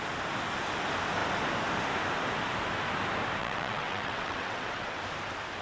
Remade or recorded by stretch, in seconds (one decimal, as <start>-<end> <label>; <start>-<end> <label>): 0.0-3.4 recorded; 3.4-5.0 remade; 5.0-5.6 recorded